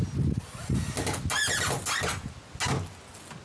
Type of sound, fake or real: real